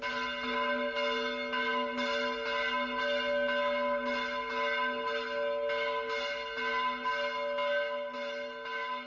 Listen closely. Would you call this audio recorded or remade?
recorded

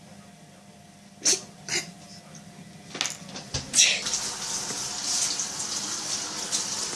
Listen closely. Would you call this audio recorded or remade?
recorded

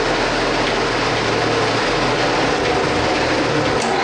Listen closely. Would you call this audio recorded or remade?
recorded